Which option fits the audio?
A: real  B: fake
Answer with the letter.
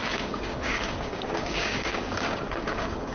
B